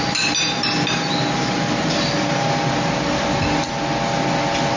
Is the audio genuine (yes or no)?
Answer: yes